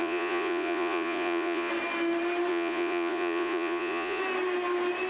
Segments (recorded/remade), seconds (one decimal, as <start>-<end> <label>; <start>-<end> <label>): 0.0-1.7 remade; 1.7-2.5 recorded; 2.5-4.2 remade; 4.2-5.1 recorded